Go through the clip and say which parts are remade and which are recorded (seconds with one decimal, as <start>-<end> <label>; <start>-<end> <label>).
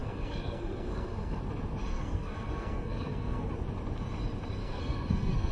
0.0-1.4 remade; 1.4-1.9 recorded; 1.9-3.5 remade; 3.5-4.6 recorded; 4.6-5.5 remade